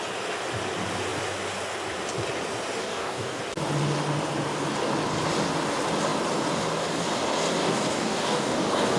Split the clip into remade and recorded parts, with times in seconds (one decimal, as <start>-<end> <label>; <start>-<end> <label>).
0.0-2.8 recorded; 2.8-3.4 remade; 3.4-7.6 recorded; 7.6-9.0 remade